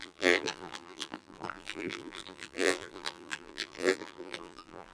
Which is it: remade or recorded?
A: remade